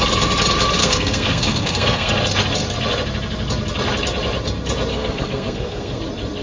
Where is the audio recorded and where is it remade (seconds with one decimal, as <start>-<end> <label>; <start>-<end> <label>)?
0.0-0.8 recorded; 0.8-2.1 remade; 2.1-4.9 recorded; 4.9-6.0 remade; 6.0-6.4 recorded